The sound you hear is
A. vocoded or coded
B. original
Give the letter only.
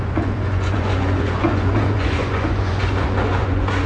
A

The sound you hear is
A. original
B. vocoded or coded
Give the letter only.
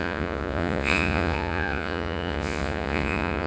B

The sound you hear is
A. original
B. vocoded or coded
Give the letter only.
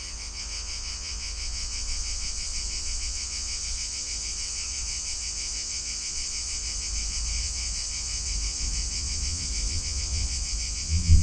B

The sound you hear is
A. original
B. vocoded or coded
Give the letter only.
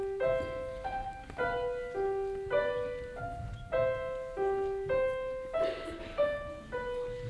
A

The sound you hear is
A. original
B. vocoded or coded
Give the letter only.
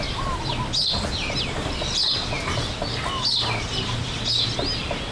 A